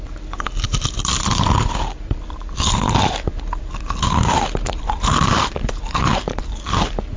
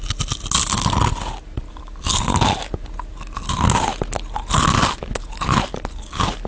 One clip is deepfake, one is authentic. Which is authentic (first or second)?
second